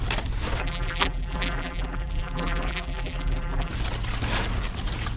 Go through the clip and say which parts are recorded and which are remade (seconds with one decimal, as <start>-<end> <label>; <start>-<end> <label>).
0.0-0.6 recorded; 0.6-3.7 remade; 3.7-5.2 recorded